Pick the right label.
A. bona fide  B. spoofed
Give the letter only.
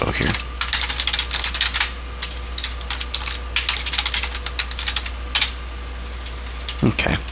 A